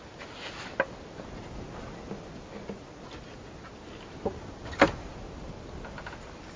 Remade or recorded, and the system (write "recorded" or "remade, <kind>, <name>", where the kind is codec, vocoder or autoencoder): recorded